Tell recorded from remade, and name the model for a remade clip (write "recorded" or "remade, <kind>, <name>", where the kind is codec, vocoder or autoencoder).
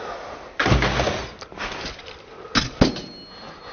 recorded